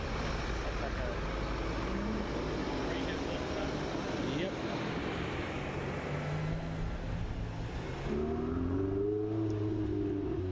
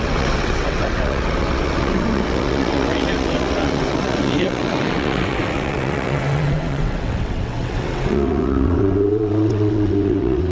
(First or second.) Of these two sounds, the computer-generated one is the second